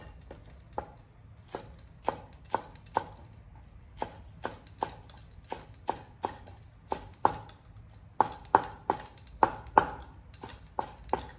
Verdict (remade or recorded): recorded